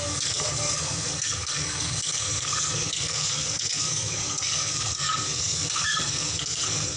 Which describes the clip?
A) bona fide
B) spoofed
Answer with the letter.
B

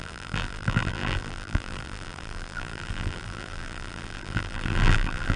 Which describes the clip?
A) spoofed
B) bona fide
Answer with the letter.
A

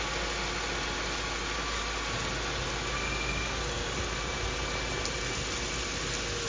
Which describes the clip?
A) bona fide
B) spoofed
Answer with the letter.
A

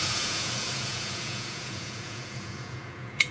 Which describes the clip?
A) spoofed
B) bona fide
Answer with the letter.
A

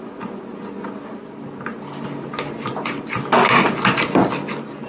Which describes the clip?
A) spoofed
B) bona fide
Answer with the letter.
B